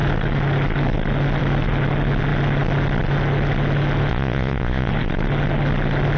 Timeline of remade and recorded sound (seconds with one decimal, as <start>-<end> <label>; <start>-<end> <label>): 0.0-4.1 recorded; 4.1-4.9 remade; 4.9-6.2 recorded